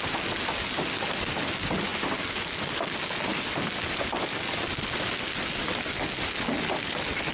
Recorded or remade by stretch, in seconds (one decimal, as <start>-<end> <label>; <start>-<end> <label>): 0.0-7.3 recorded